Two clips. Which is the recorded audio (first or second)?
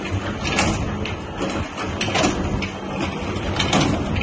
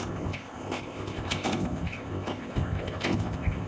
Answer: first